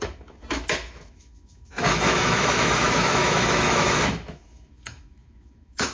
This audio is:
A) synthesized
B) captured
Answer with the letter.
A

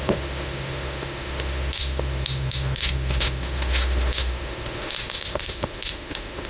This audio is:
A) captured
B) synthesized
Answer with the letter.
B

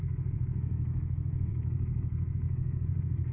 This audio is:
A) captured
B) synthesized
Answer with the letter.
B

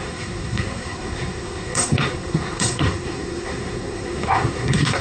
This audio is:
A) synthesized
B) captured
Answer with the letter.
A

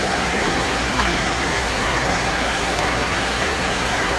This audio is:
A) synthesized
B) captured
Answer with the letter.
A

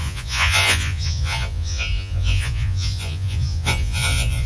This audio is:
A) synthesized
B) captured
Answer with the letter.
A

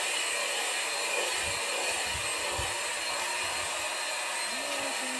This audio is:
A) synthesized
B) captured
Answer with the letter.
B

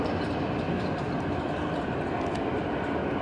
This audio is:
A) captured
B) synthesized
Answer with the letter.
A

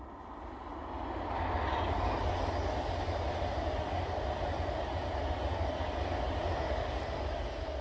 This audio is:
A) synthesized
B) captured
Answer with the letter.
B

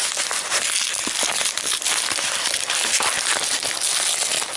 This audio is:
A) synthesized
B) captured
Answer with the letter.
B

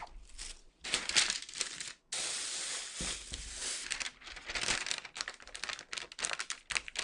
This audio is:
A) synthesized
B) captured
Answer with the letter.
B